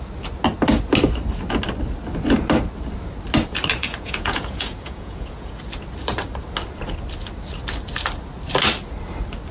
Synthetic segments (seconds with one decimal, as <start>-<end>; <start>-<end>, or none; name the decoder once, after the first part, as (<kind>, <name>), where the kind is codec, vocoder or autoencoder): 3.8-5.6 (vocoder, Vocos)